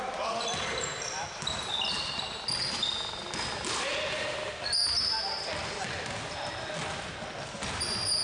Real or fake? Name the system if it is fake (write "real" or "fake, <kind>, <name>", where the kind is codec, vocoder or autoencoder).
real